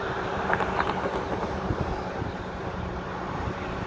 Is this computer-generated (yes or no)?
yes